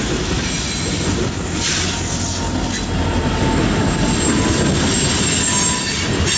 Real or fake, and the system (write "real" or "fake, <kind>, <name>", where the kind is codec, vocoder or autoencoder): real